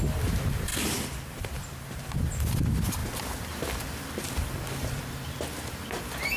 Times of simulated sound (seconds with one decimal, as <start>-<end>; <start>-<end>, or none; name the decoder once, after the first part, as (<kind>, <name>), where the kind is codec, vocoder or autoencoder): 0.0-6.4 (vocoder, BigVGAN v2)